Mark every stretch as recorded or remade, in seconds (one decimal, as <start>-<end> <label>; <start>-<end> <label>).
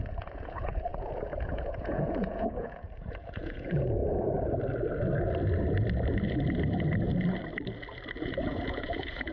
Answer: 0.0-4.0 remade; 4.0-8.2 recorded; 8.2-9.3 remade